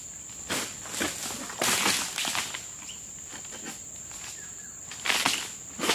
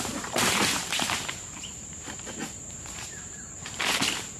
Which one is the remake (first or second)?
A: second